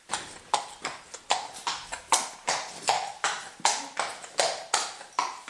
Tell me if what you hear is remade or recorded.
recorded